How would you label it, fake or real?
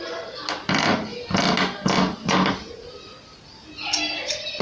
real